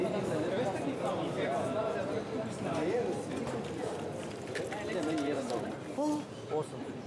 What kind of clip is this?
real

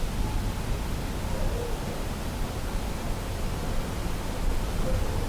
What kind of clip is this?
real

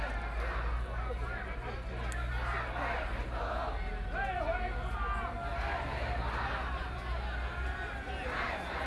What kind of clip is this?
real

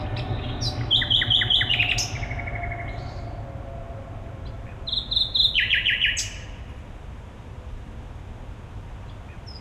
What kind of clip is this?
real